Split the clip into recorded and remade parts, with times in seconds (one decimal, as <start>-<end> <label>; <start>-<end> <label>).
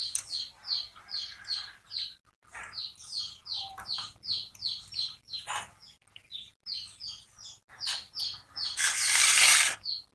0.0-10.1 recorded